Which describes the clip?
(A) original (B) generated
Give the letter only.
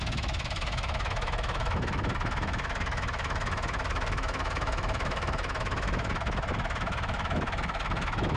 B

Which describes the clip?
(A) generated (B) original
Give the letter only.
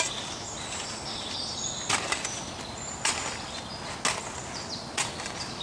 B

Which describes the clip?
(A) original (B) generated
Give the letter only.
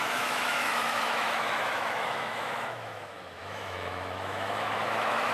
B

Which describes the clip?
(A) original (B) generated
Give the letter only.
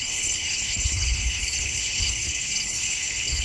B